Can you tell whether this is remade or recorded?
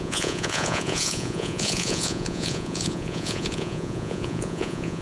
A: remade